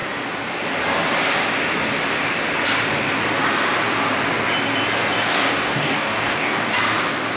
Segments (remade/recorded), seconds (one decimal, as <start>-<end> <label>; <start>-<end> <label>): 0.0-5.3 recorded; 5.3-6.7 remade; 6.7-7.4 recorded